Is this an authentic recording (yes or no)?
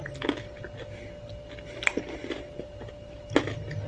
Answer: yes